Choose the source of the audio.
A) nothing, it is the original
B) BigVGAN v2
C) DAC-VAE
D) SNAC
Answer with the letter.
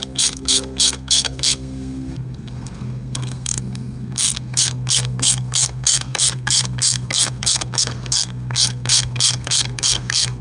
D